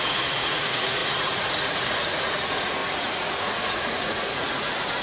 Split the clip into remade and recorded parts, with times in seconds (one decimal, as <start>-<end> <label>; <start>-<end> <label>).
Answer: 0.0-5.0 remade